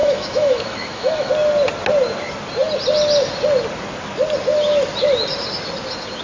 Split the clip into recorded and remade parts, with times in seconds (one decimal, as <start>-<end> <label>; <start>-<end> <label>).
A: 0.0-1.3 remade; 1.3-6.2 recorded

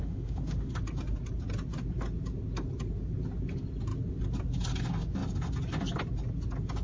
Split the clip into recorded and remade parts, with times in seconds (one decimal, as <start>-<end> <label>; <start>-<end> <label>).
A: 0.0-0.8 remade; 0.8-6.8 recorded

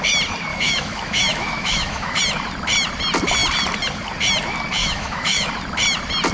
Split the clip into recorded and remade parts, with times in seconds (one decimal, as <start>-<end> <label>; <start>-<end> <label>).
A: 0.0-0.5 recorded; 0.5-2.2 remade; 2.2-4.8 recorded; 4.8-5.5 remade; 5.5-6.3 recorded